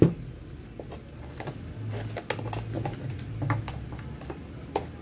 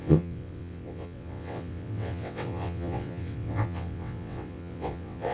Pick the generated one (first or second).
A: second